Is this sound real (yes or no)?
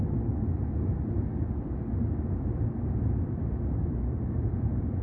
yes